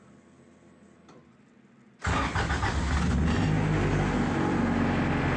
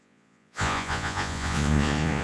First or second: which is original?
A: first